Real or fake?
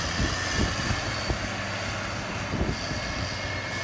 real